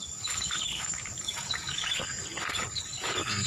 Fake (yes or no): yes